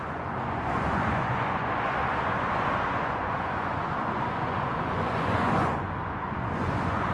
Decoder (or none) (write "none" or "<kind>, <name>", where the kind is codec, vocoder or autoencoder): vocoder, Vocos